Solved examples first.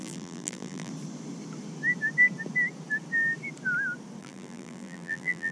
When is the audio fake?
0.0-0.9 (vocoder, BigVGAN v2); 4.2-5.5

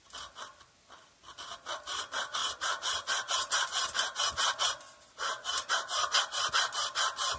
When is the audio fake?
2.4-6.5 (vocoder, BigVGAN v2)

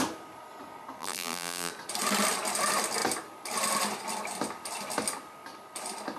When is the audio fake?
1.0-1.7 (vocoder, BigVGAN v2)